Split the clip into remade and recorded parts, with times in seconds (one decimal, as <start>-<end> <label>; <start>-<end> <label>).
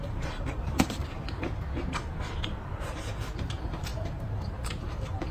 0.0-1.0 remade; 1.0-3.5 recorded; 3.5-5.3 remade